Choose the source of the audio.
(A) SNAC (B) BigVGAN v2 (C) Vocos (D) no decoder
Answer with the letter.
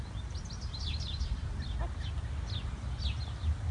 D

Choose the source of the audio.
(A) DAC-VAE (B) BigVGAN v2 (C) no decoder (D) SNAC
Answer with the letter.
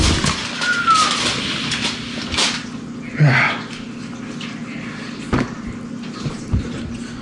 C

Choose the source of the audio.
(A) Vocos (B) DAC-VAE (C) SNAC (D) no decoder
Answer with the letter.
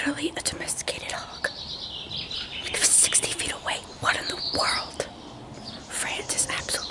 D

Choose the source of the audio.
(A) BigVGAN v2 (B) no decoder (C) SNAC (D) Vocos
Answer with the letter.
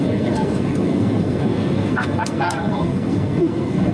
C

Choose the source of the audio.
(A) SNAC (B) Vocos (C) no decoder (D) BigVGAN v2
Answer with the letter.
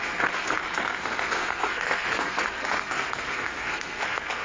A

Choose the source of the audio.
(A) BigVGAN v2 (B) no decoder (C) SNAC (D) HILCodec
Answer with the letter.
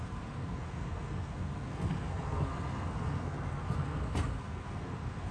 C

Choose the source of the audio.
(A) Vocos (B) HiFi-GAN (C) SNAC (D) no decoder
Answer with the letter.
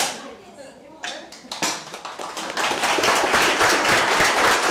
D